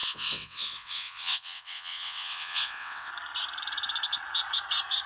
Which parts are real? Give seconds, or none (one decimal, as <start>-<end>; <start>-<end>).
3.1-5.1